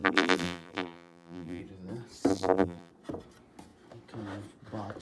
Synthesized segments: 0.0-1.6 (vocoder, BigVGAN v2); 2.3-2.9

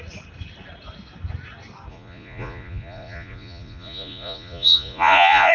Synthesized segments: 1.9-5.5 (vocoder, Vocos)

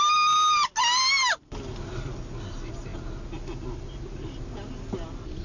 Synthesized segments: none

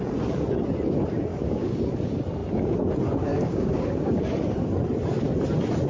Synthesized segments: 1.3-1.8 (codec, DAC); 3.3-4.2

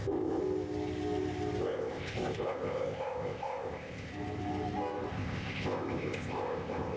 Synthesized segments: 0.0-0.4 (codec, ZipCodec); 1.6-4.1; 5.1-7.0

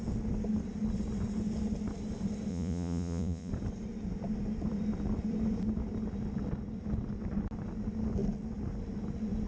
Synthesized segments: 2.5-3.5 (vocoder, Vocos)

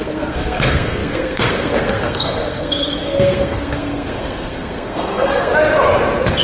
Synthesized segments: 0.0-5.5 (codec, SNAC)

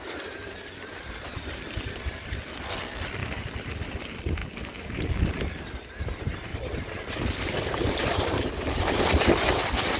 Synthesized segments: 0.0-4.4 (vocoder, BigVGAN v2); 6.0-10.0